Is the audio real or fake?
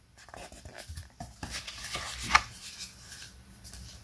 real